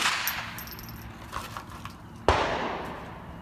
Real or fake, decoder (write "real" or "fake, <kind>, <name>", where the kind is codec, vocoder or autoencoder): real